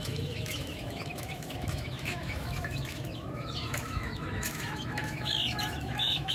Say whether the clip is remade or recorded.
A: remade